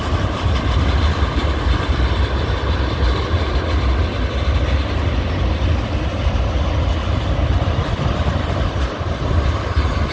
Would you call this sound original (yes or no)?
yes